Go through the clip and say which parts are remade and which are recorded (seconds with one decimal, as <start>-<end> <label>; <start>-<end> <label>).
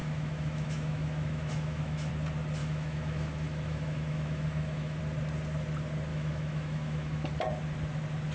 0.0-2.1 remade; 2.1-2.6 recorded; 2.6-5.0 remade; 5.0-6.1 recorded; 6.1-7.3 remade; 7.3-8.3 recorded